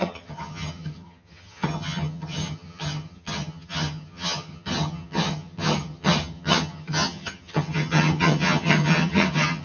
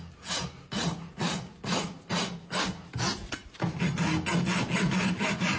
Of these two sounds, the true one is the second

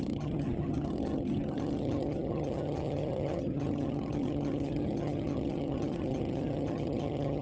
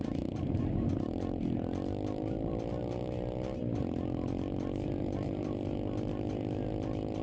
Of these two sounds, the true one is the second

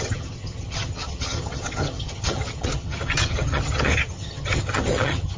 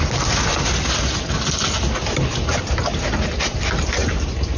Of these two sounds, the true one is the second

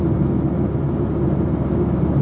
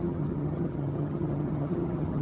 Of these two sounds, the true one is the first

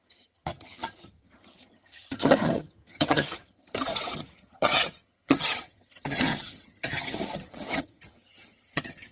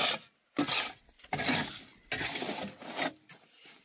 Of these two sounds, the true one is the second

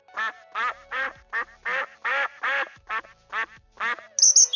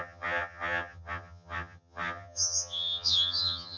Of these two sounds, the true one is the first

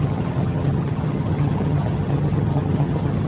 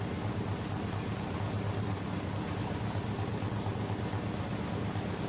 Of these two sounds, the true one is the second